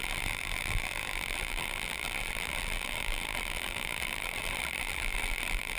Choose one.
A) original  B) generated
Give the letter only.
B